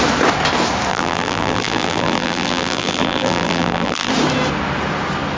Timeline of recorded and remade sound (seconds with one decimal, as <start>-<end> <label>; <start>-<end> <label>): 0.0-0.9 recorded; 0.9-4.1 remade; 4.1-5.4 recorded